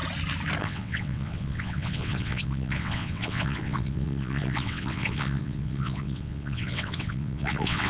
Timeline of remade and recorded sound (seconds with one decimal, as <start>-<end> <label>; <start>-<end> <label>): 0.0-0.6 recorded; 0.6-7.9 remade